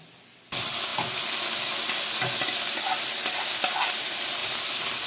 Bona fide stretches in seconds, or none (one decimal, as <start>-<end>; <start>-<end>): 0.0-5.1